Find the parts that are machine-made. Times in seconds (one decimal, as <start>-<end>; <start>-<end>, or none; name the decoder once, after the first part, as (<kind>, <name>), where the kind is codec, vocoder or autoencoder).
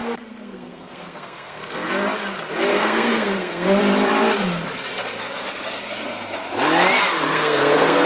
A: 0.0-1.9 (codec, SNAC); 2.7-3.8; 7.3-8.1